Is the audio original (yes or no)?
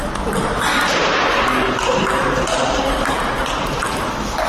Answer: yes